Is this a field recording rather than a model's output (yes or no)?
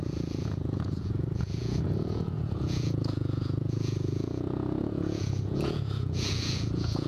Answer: no